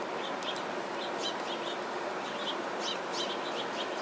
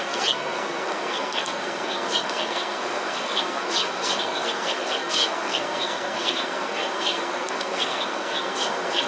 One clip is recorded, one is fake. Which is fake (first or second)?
second